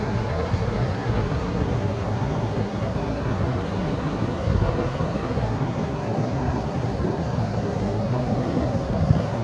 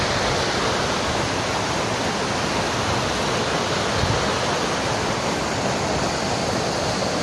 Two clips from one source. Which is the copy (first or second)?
first